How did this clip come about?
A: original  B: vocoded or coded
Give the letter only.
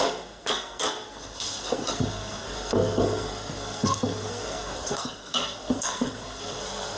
B